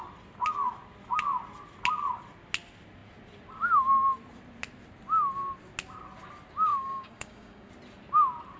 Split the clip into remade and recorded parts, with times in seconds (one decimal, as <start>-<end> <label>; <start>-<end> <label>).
0.0-6.7 recorded; 6.7-7.7 remade; 7.7-8.6 recorded